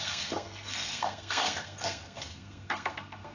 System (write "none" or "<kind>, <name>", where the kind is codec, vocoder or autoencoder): codec, SNAC